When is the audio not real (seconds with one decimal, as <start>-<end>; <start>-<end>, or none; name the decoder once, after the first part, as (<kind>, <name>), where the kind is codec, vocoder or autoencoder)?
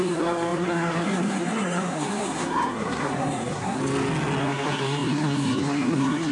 0.0-3.8 (codec, SNAC); 4.4-6.3